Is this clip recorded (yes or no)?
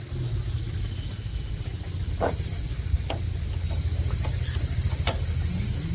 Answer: yes